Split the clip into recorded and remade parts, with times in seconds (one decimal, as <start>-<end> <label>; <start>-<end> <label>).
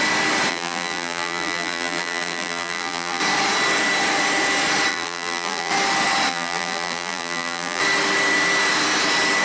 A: 0.0-0.5 recorded; 0.5-3.2 remade; 3.2-4.9 recorded; 4.9-5.7 remade; 5.7-6.3 recorded; 6.3-7.8 remade; 7.8-9.4 recorded